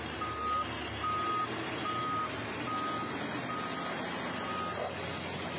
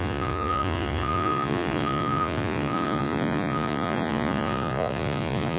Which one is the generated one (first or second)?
second